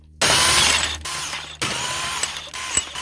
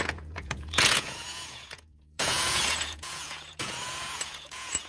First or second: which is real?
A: first